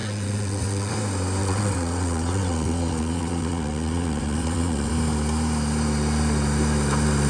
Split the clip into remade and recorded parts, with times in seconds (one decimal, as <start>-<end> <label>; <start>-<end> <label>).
0.0-0.9 remade; 0.9-1.4 recorded; 1.4-4.9 remade; 4.9-7.3 recorded